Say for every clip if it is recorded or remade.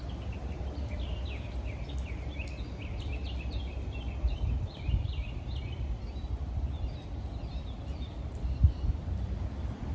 remade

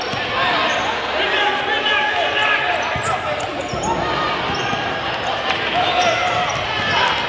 recorded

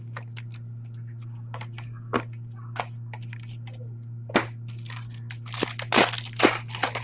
recorded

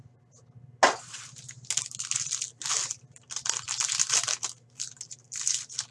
recorded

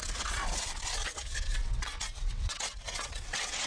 remade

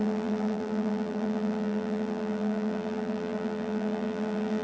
remade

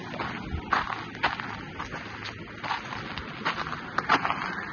recorded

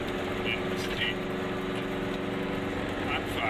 recorded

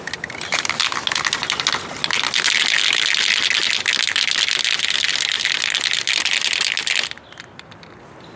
recorded